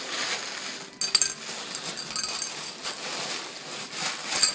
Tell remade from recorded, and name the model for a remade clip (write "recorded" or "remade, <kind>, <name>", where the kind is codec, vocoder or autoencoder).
recorded